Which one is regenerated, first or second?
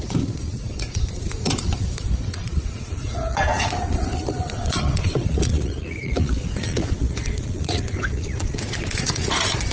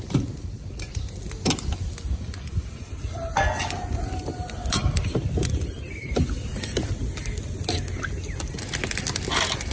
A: first